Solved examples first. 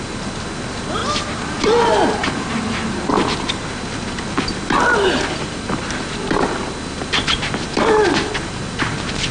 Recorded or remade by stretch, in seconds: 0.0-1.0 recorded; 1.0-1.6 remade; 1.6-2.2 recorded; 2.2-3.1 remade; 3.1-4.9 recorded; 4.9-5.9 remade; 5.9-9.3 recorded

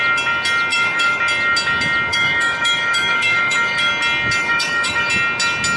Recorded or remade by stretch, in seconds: 0.0-0.7 recorded; 0.7-1.2 remade; 1.2-2.1 recorded; 2.1-3.9 remade; 3.9-4.4 recorded; 4.4-5.1 remade; 5.1-5.8 recorded